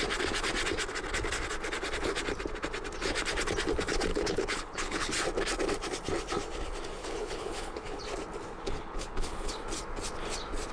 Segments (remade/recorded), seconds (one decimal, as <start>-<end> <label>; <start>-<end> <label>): 0.0-4.1 recorded; 4.1-5.1 remade; 5.1-7.0 recorded; 7.0-8.0 remade; 8.0-8.5 recorded; 8.5-9.5 remade; 9.5-10.7 recorded